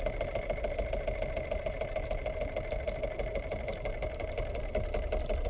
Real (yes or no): yes